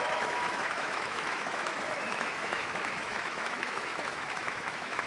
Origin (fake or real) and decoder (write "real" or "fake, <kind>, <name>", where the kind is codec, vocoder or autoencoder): fake, autoencoder, DAC-VAE